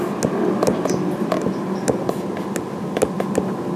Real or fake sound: real